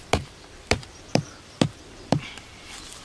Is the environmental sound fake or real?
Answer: fake